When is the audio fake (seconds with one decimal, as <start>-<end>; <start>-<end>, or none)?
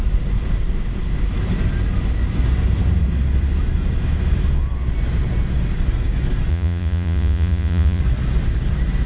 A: 6.5-8.0